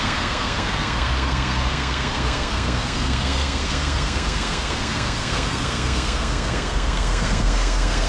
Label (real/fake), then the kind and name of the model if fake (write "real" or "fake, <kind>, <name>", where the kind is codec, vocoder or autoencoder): fake, codec, SNAC